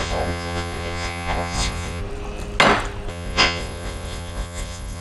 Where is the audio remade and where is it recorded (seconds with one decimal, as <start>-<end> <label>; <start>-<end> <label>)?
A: 0.0-2.0 remade; 2.0-3.1 recorded; 3.1-5.0 remade